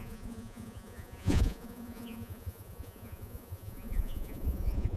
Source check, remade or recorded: remade